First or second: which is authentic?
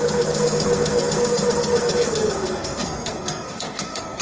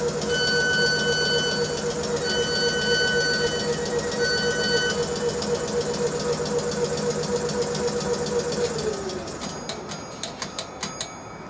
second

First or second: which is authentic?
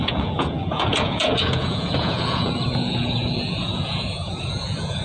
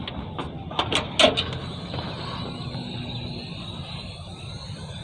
second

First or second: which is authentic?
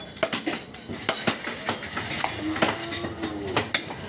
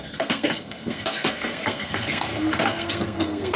first